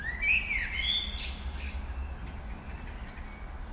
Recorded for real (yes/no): yes